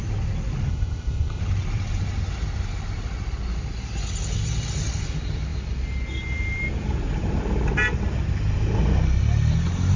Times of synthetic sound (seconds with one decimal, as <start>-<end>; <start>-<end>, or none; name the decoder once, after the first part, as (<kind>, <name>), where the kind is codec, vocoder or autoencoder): 0.7-1.4 (codec, ZipCodec)

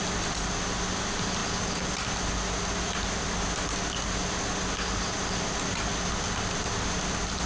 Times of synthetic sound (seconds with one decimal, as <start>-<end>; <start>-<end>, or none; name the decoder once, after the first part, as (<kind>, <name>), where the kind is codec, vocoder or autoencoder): none